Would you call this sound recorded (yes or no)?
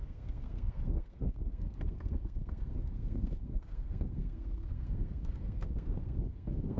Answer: no